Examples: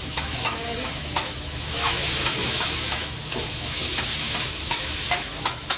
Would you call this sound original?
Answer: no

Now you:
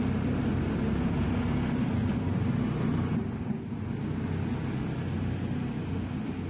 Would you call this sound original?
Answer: yes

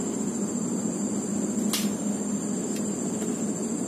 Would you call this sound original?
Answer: yes